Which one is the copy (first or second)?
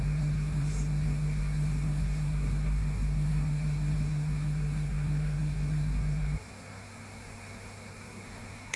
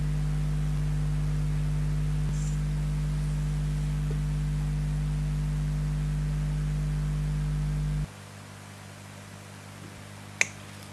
first